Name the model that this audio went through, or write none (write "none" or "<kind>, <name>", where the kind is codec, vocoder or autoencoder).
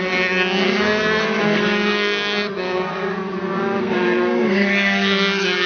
codec, SNAC